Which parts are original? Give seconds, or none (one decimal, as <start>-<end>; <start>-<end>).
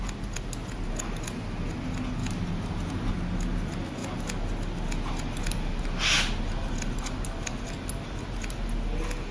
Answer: 0.0-2.2; 3.1-9.3